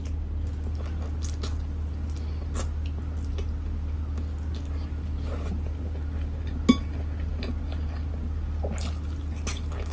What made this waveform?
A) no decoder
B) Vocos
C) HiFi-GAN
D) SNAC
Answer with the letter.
A